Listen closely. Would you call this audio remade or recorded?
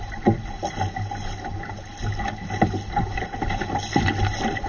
recorded